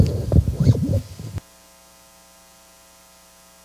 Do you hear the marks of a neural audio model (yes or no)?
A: no